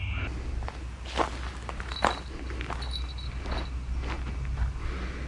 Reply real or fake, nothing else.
real